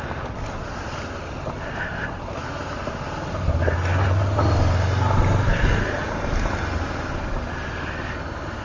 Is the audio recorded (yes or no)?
yes